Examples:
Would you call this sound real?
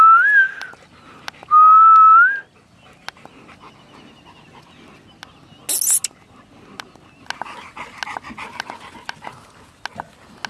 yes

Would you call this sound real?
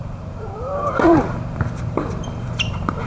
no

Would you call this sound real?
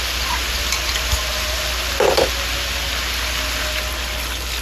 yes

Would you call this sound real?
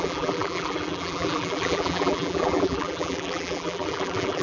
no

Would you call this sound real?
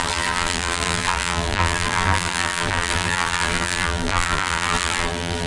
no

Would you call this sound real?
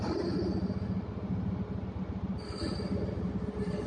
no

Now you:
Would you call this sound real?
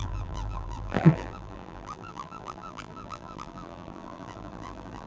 no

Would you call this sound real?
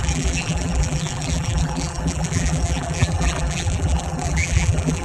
no